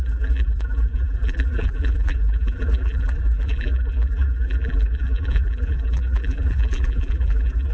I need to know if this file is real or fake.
fake